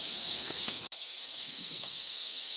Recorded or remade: remade